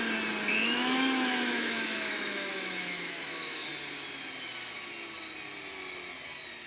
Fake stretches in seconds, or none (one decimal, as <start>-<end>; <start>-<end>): 0.6-3.7